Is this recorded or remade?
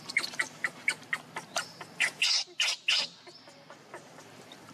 recorded